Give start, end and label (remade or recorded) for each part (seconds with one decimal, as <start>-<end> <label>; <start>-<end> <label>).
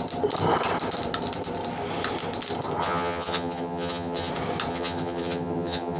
0.0-2.8 recorded; 2.8-4.3 remade; 4.3-4.7 recorded; 4.7-6.0 remade